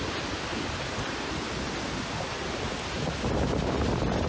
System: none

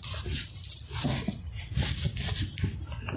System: none